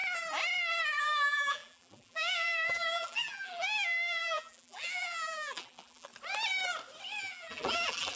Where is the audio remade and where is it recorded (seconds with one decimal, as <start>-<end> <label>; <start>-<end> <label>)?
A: 0.0-1.0 recorded; 1.0-6.1 remade; 6.1-7.2 recorded; 7.2-8.2 remade